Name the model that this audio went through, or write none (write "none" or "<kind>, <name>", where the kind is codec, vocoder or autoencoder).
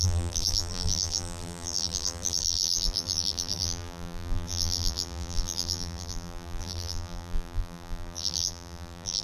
vocoder, BigVGAN v2